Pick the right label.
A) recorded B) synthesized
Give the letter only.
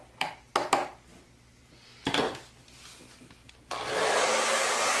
A